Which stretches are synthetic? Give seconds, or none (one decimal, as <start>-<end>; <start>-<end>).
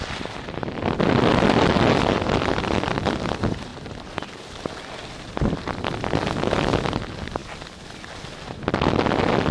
none